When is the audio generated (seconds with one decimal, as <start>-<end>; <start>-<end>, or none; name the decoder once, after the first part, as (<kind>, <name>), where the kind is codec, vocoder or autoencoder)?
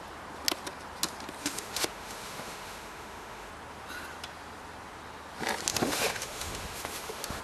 1.4-3.5 (autoencoder, DAC-VAE); 5.7-7.4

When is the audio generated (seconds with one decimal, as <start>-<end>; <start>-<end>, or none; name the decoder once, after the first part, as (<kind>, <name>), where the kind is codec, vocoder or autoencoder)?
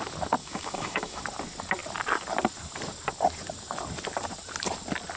0.4-1.2 (autoencoder, DAC-VAE)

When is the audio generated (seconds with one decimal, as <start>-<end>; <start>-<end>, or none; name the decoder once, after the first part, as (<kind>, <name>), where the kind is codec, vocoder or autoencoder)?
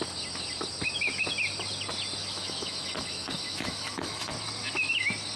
2.2-4.3 (autoencoder, DAC-VAE)